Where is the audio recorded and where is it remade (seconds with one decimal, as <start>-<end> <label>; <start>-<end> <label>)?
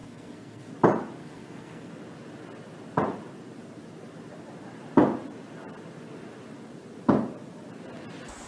0.0-0.7 remade; 0.7-1.2 recorded; 1.2-1.9 remade; 1.9-8.5 recorded